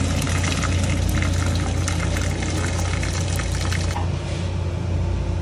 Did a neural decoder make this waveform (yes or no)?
no